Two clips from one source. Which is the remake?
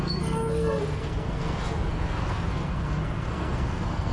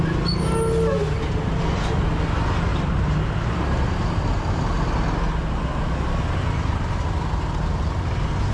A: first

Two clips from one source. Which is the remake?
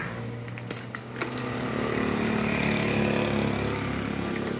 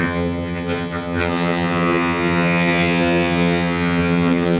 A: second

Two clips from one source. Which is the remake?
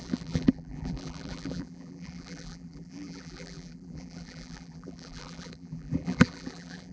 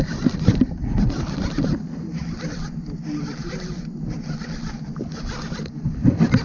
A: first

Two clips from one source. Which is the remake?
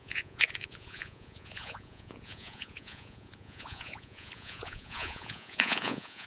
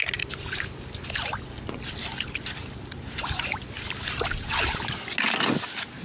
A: first